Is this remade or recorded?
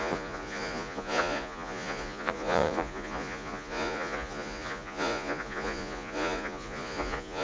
remade